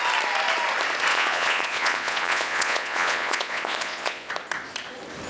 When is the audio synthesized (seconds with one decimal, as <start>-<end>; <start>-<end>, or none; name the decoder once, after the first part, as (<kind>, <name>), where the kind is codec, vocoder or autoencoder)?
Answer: 1.1-4.3 (vocoder, Vocos)